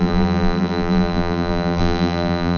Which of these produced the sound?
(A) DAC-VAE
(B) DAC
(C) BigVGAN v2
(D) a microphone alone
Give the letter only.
C